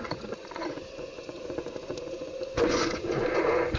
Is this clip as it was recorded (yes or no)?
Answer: no